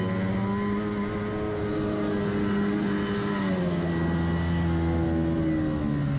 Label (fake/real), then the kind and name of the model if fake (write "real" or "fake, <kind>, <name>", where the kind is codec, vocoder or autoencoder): real